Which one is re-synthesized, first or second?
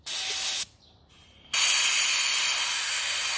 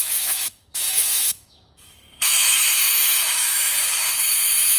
second